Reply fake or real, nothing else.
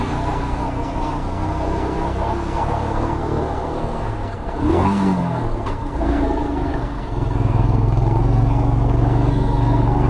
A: fake